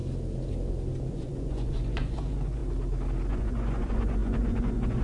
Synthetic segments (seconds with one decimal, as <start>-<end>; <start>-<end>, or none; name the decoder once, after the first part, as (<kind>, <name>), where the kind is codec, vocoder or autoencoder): 1.1-2.6 (vocoder, Vocos); 3.3-5.0